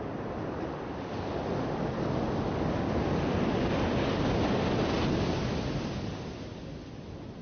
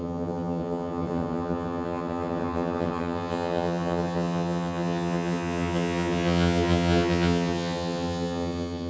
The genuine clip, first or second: first